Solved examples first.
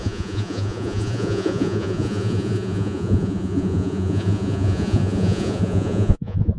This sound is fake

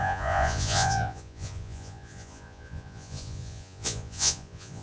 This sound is fake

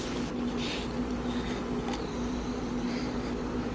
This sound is real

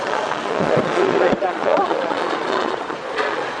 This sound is fake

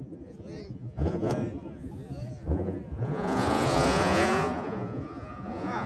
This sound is fake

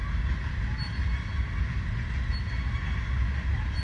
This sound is real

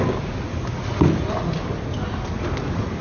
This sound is real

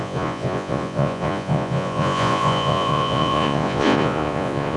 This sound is fake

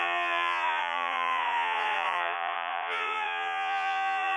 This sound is fake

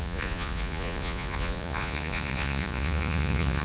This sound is fake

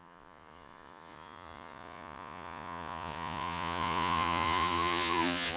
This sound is fake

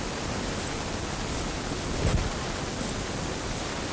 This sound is real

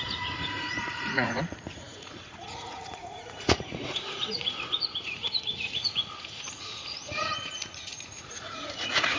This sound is fake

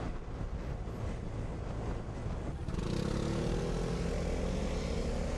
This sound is real